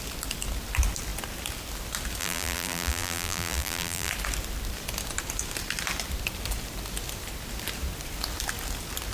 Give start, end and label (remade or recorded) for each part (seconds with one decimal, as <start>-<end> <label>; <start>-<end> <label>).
0.0-2.2 recorded; 2.2-4.1 remade; 4.1-9.1 recorded